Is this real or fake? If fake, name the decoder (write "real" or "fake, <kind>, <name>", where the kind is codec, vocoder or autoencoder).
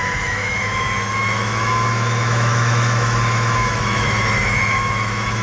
fake, autoencoder, DAC-VAE